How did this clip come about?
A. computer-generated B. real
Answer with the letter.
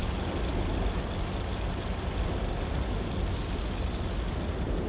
B